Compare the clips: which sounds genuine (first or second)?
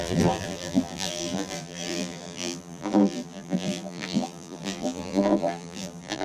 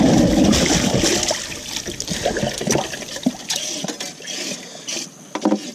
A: second